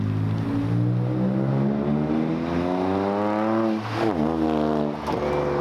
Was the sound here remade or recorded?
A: recorded